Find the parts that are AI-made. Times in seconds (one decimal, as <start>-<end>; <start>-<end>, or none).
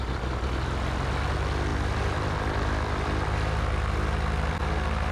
1.7-4.6